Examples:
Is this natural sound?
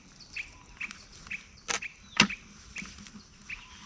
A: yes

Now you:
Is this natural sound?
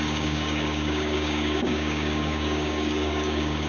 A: no